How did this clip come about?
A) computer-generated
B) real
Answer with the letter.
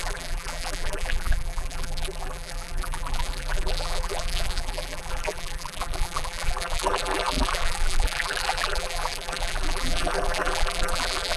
A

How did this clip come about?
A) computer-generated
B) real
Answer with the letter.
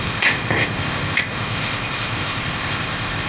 A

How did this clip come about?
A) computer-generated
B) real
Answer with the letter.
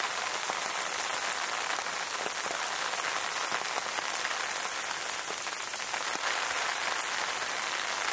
B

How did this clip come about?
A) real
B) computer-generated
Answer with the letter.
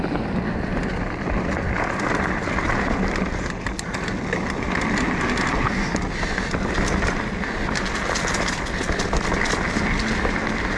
A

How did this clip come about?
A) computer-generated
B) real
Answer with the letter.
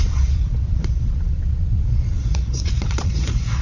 A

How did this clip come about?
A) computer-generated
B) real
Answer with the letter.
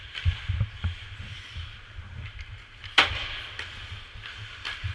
B